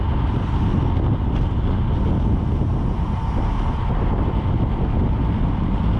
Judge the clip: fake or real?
real